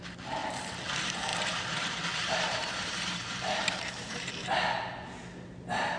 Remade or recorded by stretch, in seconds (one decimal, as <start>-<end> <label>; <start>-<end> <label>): 0.0-1.3 recorded; 1.3-4.3 remade; 4.3-6.0 recorded